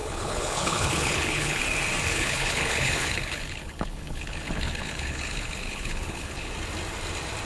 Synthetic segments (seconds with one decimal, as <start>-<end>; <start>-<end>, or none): 0.0-1.6; 2.1-6.5